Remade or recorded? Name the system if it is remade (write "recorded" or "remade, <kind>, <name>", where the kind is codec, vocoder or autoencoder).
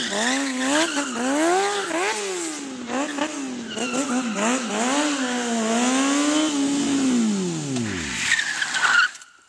recorded